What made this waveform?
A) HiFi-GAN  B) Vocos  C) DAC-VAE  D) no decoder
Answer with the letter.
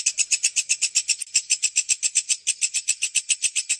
D